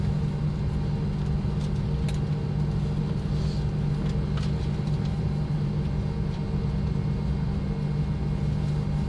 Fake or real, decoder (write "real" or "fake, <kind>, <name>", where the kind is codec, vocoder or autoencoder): real